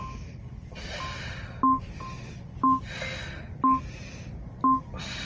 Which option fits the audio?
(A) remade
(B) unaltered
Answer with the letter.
B